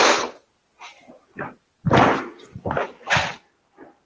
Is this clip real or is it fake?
real